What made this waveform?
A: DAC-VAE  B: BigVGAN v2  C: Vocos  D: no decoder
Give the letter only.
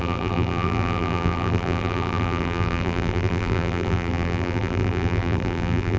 B